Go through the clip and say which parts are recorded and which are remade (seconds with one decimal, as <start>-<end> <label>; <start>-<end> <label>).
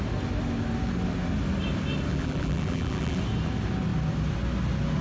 0.0-2.1 recorded; 2.1-3.2 remade; 3.2-5.0 recorded